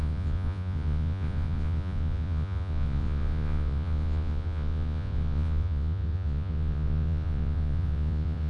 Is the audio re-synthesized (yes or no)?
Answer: yes